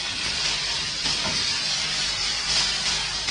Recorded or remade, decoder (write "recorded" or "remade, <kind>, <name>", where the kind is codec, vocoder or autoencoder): recorded